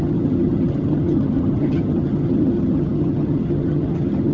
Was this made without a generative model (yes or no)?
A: no